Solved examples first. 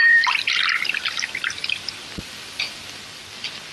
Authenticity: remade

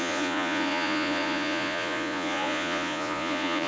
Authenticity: remade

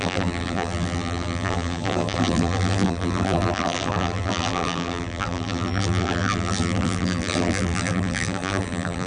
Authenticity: remade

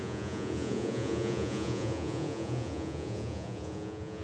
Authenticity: remade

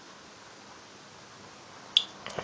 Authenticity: recorded